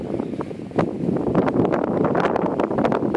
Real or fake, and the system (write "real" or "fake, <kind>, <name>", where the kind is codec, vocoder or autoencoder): real